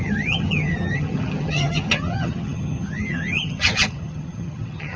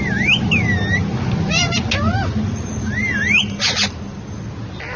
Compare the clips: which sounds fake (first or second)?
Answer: first